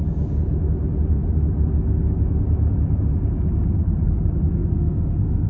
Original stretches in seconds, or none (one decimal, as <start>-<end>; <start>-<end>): 0.0-4.6